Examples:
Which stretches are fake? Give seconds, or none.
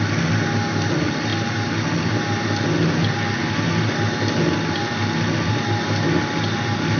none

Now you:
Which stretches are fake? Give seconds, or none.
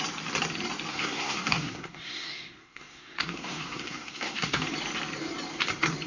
0.9-4.6 (codec, SNAC)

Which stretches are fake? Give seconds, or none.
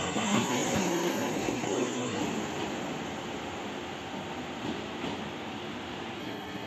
0.0-2.2 (codec, SNAC); 6.2-6.7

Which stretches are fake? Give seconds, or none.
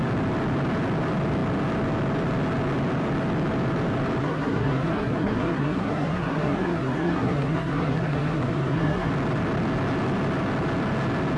4.2-9.1 (codec, SNAC)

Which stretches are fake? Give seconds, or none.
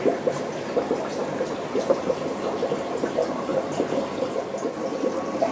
none